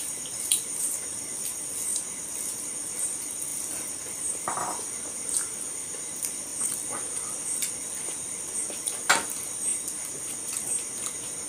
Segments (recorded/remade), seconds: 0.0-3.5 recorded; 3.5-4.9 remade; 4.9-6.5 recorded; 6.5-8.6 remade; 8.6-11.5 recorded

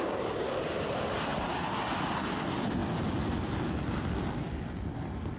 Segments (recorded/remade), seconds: 0.0-1.3 remade; 1.3-2.0 recorded; 2.0-5.4 remade

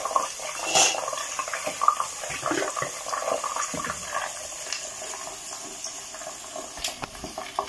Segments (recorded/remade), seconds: 0.0-7.7 recorded

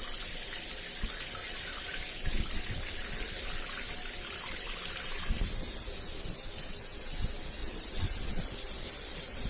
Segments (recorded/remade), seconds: 0.0-1.4 recorded; 1.4-2.0 remade; 2.0-9.5 recorded

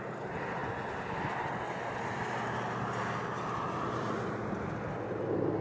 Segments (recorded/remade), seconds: 0.0-5.6 recorded

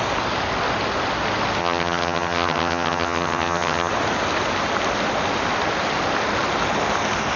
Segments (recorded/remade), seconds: 0.0-1.6 recorded; 1.6-3.9 remade; 3.9-7.4 recorded